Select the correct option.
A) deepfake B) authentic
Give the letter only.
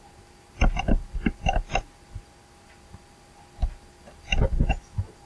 B